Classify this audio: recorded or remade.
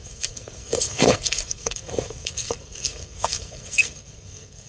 remade